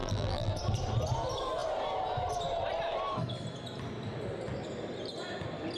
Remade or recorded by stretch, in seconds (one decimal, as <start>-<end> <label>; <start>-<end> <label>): 0.0-0.5 remade; 0.5-5.8 recorded

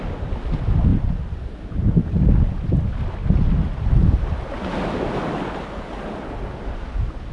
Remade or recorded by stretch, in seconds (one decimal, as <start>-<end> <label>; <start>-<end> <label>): 0.0-7.3 recorded

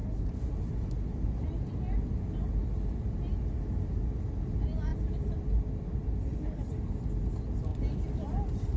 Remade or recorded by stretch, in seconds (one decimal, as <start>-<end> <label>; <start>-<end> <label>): 0.0-0.7 remade; 0.7-4.9 recorded; 4.9-6.1 remade; 6.1-7.7 recorded; 7.7-8.8 remade

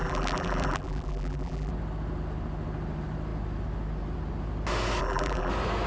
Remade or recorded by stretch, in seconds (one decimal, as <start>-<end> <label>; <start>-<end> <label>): 0.0-1.7 remade; 1.7-5.0 recorded; 5.0-5.5 remade; 5.5-5.9 recorded

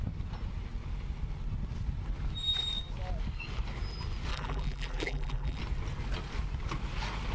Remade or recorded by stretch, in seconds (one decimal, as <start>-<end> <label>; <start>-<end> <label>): 0.0-4.3 recorded; 4.3-5.6 remade; 5.6-7.3 recorded